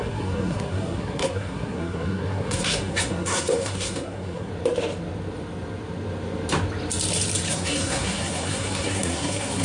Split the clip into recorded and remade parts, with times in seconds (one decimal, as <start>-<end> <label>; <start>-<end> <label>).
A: 0.0-4.5 remade; 4.5-7.5 recorded; 7.5-9.6 remade